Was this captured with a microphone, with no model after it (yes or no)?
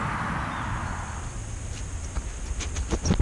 yes